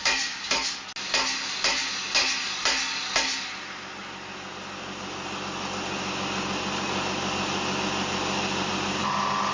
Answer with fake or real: real